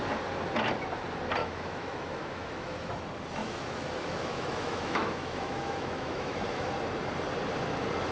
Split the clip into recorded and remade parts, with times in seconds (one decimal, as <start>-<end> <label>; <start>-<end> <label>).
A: 0.0-1.4 recorded; 1.4-2.9 remade; 2.9-3.4 recorded; 3.4-6.7 remade; 6.7-8.1 recorded